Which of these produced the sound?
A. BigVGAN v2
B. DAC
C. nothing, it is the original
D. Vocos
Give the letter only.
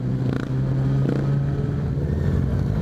C